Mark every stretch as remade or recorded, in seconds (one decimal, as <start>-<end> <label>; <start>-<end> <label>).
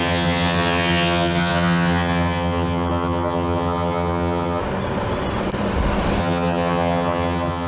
0.0-4.6 remade; 4.6-6.2 recorded; 6.2-7.7 remade